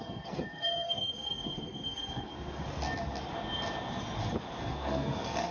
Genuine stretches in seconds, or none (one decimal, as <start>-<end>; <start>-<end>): 2.3-4.6